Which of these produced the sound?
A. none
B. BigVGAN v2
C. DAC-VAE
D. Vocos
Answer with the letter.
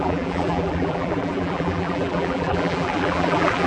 B